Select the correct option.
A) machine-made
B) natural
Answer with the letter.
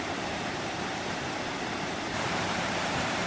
A